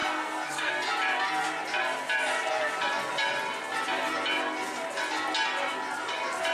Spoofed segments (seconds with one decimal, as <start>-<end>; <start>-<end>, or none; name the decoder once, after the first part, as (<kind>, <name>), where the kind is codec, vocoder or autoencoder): 0.0-0.7 (codec, SNAC)